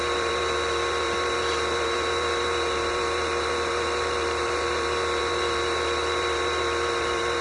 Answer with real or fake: fake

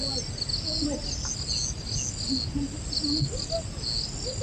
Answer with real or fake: real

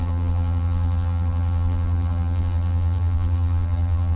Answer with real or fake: fake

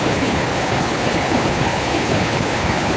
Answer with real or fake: fake